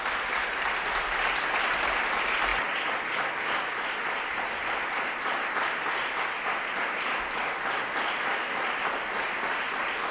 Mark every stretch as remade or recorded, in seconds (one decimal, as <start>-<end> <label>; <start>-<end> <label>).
0.0-10.1 recorded